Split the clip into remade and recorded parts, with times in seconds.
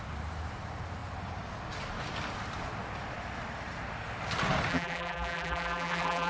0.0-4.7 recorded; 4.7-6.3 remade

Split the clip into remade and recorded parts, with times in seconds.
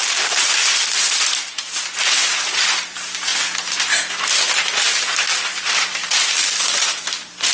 0.0-3.3 remade; 3.3-4.5 recorded; 4.5-7.5 remade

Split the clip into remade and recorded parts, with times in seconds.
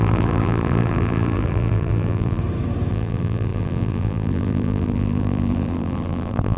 0.0-2.4 remade; 2.4-2.9 recorded; 2.9-6.6 remade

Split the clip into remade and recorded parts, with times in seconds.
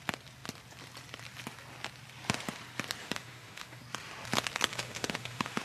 0.0-3.0 recorded; 3.0-3.8 remade; 3.8-4.7 recorded; 4.7-5.6 remade